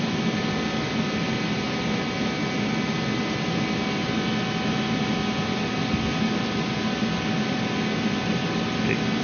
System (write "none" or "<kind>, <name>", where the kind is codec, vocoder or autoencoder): none